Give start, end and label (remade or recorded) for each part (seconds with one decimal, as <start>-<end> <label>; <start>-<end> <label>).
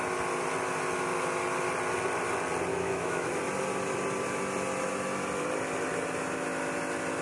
0.0-2.7 recorded; 2.7-3.4 remade; 3.4-7.2 recorded